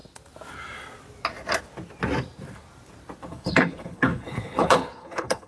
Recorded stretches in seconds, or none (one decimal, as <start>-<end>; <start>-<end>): 0.0-3.3